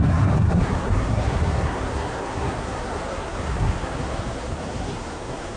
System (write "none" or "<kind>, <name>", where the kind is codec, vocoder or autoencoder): codec, SNAC